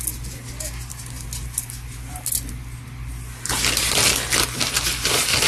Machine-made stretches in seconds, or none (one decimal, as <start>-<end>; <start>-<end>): none